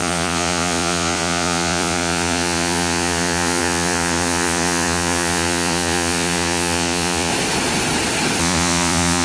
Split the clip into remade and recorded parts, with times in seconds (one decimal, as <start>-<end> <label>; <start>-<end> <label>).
0.0-7.3 remade; 7.3-8.4 recorded; 8.4-9.2 remade